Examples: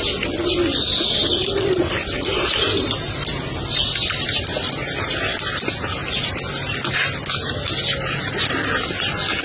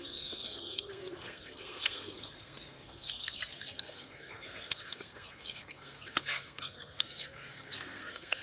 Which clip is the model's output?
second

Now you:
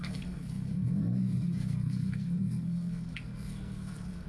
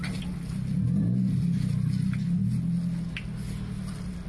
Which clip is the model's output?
first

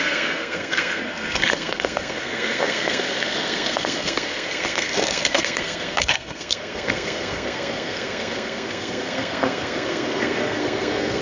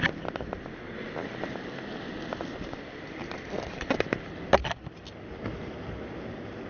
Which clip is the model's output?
first